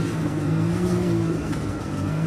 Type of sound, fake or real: fake